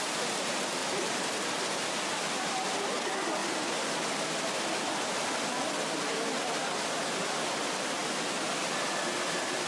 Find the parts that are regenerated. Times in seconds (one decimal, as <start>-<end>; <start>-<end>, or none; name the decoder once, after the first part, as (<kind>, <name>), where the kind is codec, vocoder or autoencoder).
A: 0.8-1.5 (vocoder, BigVGAN v2)